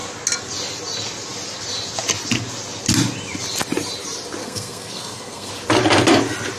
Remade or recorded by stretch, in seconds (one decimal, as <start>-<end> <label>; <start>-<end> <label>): 0.0-4.4 recorded; 4.4-5.5 remade; 5.5-6.6 recorded

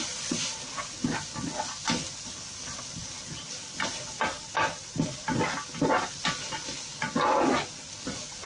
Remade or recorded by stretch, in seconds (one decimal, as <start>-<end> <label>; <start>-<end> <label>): 0.0-8.5 recorded

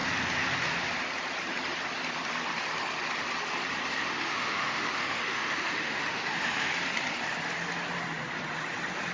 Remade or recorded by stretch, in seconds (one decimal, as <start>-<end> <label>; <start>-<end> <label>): 0.0-4.1 recorded; 4.1-6.7 remade; 6.7-9.1 recorded

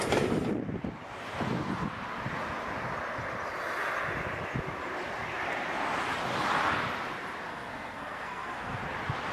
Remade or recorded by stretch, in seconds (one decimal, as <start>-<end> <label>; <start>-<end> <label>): 0.0-7.5 recorded; 7.5-8.8 remade; 8.8-9.3 recorded

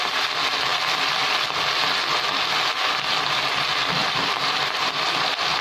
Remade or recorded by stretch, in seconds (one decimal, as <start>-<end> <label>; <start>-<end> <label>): 0.0-0.7 recorded; 0.7-1.4 remade; 1.4-4.0 recorded; 4.0-4.9 remade; 4.9-5.6 recorded

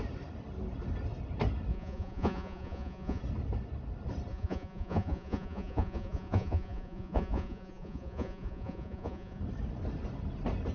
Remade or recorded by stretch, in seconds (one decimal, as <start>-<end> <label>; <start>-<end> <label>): 0.0-1.7 recorded; 1.7-3.2 remade; 3.2-4.3 recorded; 4.3-9.4 remade; 9.4-10.7 recorded

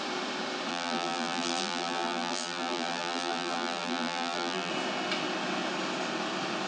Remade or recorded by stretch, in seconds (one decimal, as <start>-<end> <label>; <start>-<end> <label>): 0.0-0.7 recorded; 0.7-4.7 remade; 4.7-6.7 recorded

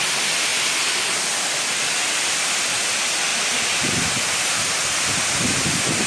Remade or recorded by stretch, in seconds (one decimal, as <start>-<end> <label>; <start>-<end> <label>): 0.0-3.3 recorded; 3.3-4.8 remade; 4.8-6.1 recorded